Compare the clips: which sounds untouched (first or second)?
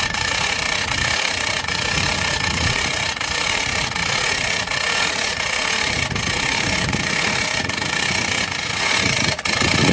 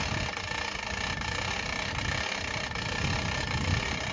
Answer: second